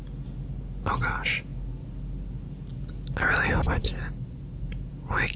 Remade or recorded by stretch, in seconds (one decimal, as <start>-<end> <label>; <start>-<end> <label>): 0.0-5.4 recorded